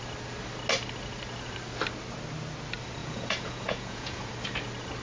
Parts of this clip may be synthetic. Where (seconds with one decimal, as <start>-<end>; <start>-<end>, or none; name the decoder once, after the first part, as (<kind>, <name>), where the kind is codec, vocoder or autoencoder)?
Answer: 3.0-4.3 (vocoder, Vocos)